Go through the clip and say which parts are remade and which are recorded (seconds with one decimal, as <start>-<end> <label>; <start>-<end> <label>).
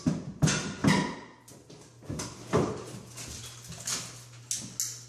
0.0-5.1 recorded